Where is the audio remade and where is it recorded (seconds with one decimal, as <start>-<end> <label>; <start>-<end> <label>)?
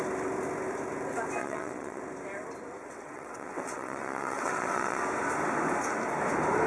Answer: 0.0-1.4 recorded; 1.4-2.0 remade; 2.0-2.8 recorded; 2.8-5.0 remade; 5.0-6.7 recorded